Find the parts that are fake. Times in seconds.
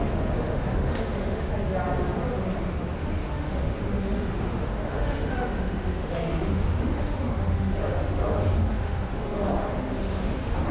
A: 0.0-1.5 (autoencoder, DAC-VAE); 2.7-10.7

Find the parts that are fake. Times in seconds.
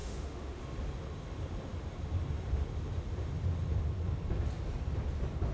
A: 0.0-0.6 (autoencoder, DAC-VAE)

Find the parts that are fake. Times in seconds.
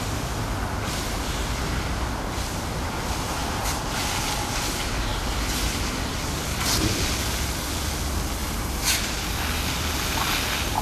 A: none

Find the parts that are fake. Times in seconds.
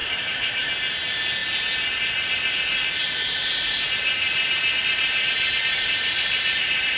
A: 0.0-0.7 (autoencoder, DAC-VAE)